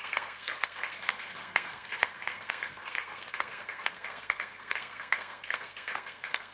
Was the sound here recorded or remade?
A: remade